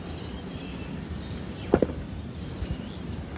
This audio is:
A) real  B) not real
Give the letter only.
A